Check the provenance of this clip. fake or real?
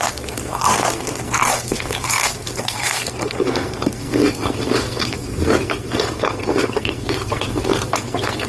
fake